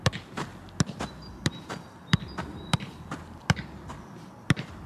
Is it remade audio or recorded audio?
recorded